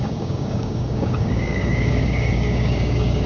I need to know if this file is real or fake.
fake